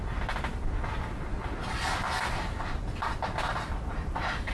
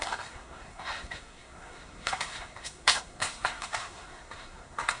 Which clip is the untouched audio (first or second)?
first